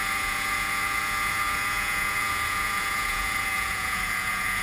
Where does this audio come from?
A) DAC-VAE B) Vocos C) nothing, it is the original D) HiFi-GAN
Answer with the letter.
B